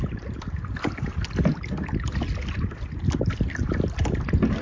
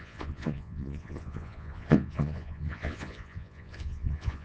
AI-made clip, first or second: second